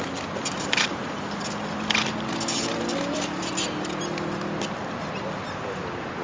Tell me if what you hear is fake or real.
real